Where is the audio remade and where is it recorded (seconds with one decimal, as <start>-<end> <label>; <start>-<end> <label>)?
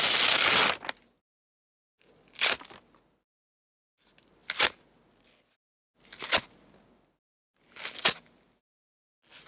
0.0-9.5 recorded